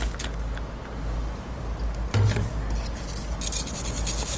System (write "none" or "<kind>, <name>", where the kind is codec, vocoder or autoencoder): none